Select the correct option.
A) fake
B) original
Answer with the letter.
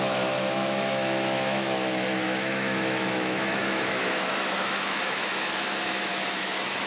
A